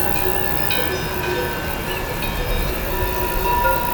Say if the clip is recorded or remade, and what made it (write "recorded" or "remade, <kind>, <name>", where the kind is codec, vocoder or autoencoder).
recorded